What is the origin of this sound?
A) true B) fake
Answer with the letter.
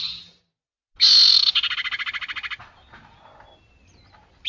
A